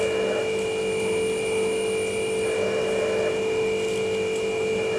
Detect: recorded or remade recorded